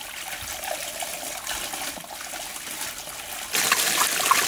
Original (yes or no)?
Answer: yes